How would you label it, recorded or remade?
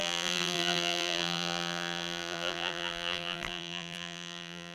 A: remade